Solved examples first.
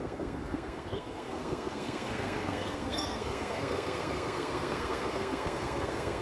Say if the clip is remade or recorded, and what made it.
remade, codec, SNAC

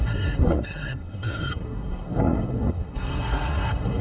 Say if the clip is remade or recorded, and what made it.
remade, codec, SNAC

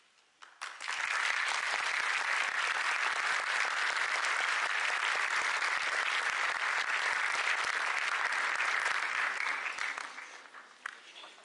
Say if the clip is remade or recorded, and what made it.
recorded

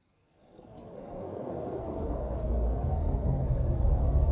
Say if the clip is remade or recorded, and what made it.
remade, codec, SNAC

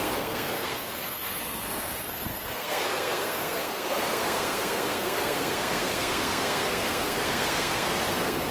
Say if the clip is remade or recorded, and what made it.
remade, codec, SNAC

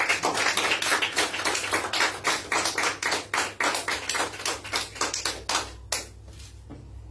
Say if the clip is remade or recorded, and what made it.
recorded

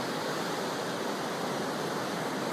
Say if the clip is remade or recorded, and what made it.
recorded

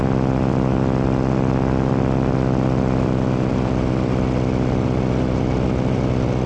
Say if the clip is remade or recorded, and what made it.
recorded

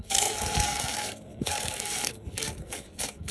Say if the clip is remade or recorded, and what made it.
remade, codec, SNAC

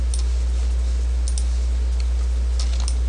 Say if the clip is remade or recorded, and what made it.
recorded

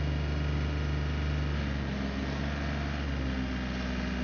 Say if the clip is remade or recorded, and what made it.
recorded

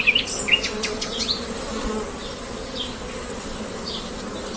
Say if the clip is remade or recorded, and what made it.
recorded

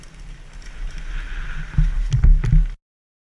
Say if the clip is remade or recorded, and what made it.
recorded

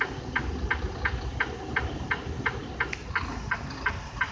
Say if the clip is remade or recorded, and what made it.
recorded